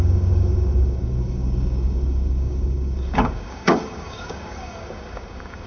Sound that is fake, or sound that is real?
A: fake